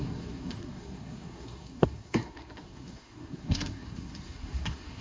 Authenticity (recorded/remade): remade